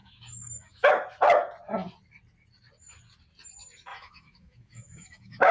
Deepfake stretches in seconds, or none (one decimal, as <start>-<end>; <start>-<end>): 0.0-0.9; 3.9-5.5